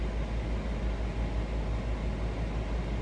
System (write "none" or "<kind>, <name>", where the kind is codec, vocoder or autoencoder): none